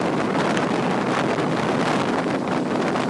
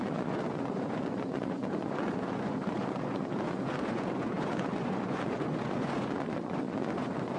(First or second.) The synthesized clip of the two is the second